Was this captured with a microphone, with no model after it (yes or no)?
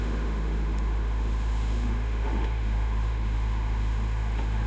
no